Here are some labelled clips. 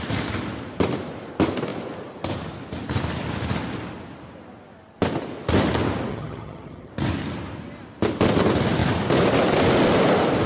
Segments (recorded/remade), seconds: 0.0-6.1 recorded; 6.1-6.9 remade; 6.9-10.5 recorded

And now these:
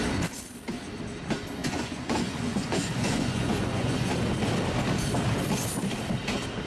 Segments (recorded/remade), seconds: 0.0-1.6 recorded; 1.6-4.1 remade; 4.1-6.7 recorded

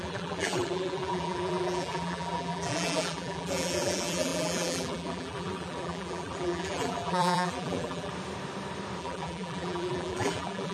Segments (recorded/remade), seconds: 0.0-8.1 remade; 8.1-9.0 recorded; 9.0-10.7 remade

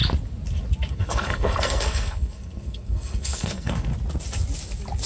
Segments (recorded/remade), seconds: 0.0-0.9 recorded; 0.9-3.9 remade; 3.9-5.1 recorded

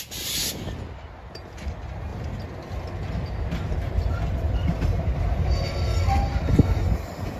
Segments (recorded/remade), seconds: 0.0-7.4 recorded

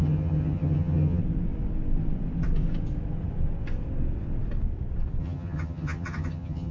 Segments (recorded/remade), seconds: 0.0-1.2 remade; 1.2-5.2 recorded; 5.2-6.7 remade

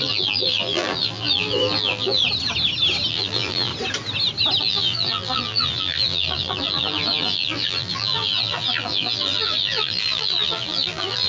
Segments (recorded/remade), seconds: 0.0-2.2 remade; 2.2-3.1 recorded; 3.1-3.7 remade; 3.7-4.6 recorded; 4.6-11.3 remade